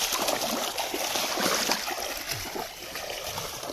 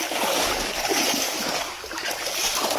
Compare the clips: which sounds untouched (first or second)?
first